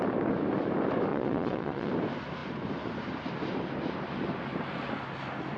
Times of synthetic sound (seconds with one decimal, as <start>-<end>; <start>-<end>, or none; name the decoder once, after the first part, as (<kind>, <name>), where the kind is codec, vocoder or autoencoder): 1.1-1.9 (vocoder, Vocos)